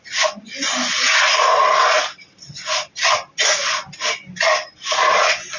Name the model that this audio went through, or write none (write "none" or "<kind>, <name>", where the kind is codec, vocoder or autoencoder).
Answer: none